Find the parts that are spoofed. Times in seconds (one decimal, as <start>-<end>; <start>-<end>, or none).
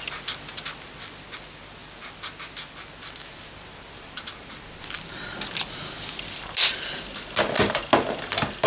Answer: none